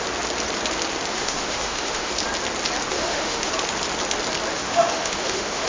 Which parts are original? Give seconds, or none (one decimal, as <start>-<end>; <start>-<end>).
0.0-1.1; 2.1-2.9; 3.5-4.5